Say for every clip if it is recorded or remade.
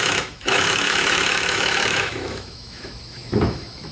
remade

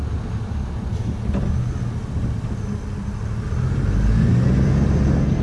recorded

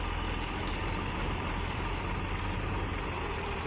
recorded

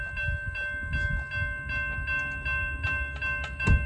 recorded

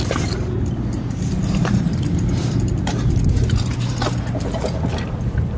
recorded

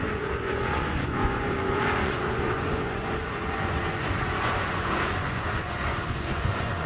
remade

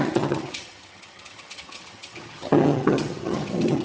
remade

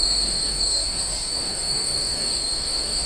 remade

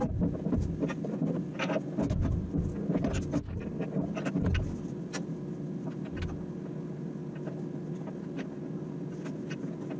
recorded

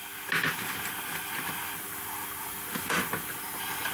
recorded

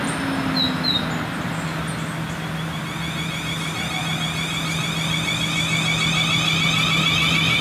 recorded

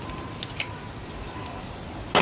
recorded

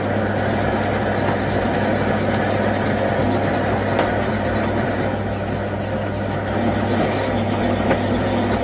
recorded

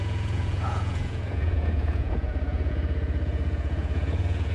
remade